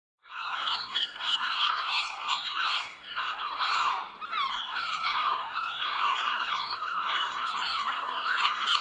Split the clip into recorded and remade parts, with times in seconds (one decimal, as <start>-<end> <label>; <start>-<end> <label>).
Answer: 0.0-3.9 remade; 3.9-4.5 recorded; 4.5-8.8 remade